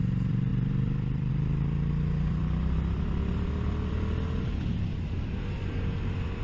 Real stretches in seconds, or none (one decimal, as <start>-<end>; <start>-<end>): none